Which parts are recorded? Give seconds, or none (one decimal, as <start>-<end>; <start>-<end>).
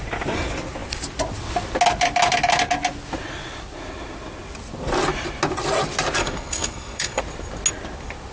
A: 0.0-6.2; 7.2-8.3